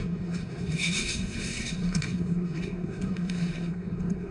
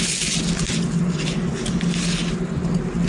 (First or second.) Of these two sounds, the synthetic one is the first